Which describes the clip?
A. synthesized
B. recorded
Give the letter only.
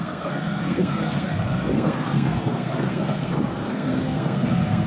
A